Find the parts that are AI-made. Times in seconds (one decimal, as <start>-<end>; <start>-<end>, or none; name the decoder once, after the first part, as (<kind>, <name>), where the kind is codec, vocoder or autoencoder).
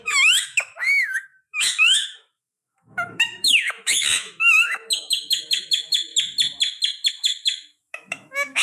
0.0-6.1 (autoencoder, DAC-VAE); 7.1-8.6